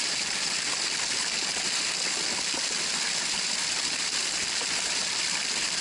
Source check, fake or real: real